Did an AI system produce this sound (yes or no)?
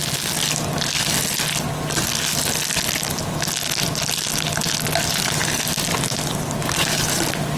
no